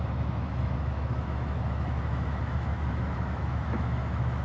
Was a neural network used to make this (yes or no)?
yes